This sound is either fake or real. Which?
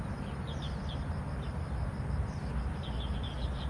real